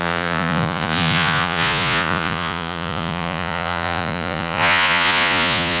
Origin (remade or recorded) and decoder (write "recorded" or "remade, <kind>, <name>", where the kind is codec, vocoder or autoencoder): remade, vocoder, Vocos